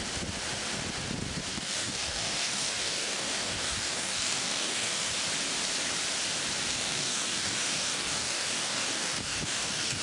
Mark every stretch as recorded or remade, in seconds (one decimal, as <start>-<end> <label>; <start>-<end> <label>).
0.0-1.5 recorded; 1.5-5.1 remade; 5.1-6.7 recorded; 6.7-10.0 remade